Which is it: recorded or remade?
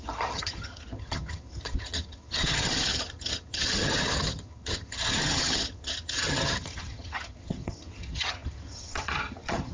remade